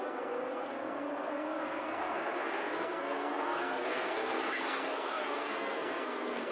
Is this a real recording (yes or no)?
no